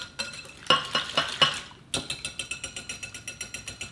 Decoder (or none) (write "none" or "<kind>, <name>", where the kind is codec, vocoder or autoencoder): none